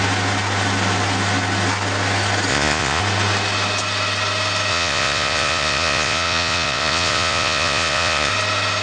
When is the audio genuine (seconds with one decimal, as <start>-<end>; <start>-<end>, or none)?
0.0-2.5; 3.0-4.7; 8.3-8.8